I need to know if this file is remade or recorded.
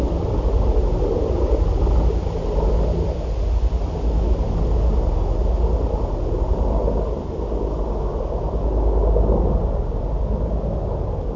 recorded